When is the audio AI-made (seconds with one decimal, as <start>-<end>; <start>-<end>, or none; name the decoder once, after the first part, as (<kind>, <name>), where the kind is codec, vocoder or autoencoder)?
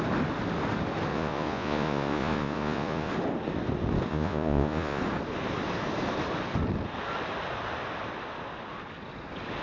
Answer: 1.1-3.1 (vocoder, Vocos); 4.1-5.0